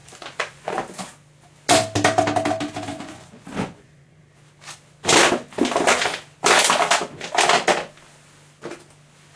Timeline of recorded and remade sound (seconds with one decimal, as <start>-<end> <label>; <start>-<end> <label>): 0.0-0.8 remade; 0.8-2.9 recorded; 2.9-4.2 remade; 4.2-9.4 recorded